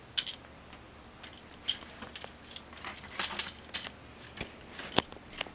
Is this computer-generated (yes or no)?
no